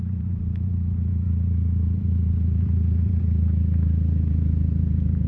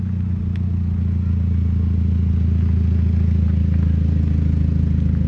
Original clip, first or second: second